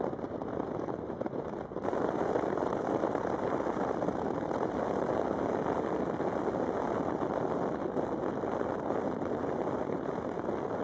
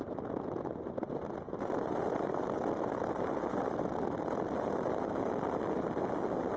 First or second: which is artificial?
first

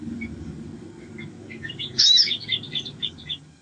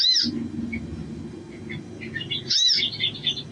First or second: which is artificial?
first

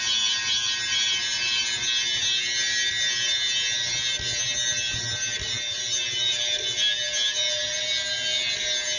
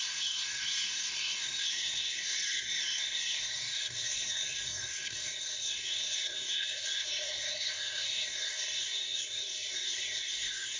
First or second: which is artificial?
second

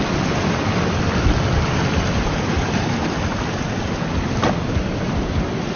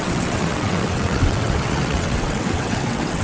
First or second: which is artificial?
second